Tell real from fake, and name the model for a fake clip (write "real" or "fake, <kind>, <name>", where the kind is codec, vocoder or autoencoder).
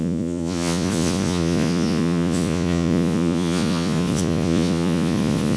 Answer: fake, vocoder, Vocos